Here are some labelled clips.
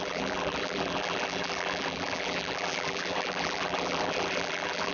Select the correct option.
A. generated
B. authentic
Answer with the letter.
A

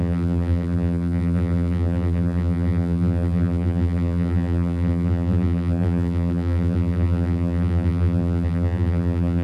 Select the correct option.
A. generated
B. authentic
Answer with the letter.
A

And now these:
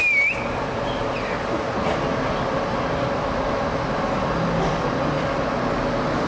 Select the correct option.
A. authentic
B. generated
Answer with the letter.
A